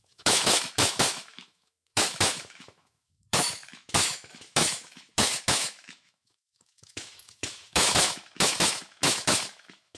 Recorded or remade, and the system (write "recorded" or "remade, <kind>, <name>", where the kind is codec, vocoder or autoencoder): remade, autoencoder, DAC-VAE